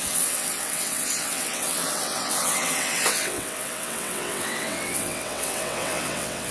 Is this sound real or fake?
fake